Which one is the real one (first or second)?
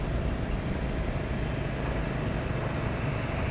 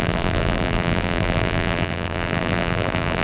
first